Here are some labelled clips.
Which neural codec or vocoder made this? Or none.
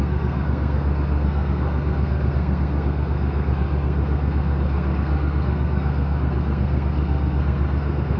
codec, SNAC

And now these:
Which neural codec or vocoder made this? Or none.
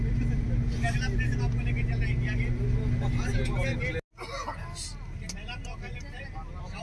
none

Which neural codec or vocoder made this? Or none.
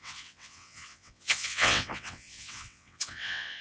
vocoder, WaveNeXt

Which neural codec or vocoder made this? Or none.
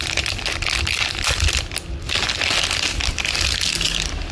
none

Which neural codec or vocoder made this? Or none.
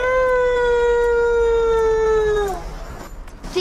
none